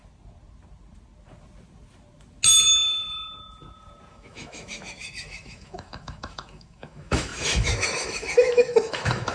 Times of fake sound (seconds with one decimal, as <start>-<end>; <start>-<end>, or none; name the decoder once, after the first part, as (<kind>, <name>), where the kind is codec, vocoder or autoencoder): 4.1-9.3 (autoencoder, DAC-VAE)